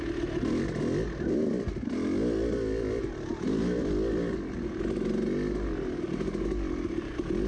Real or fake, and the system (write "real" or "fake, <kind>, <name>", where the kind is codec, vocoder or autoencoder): real